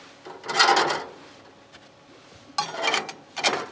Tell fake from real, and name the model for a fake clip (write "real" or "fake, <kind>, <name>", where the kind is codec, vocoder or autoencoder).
real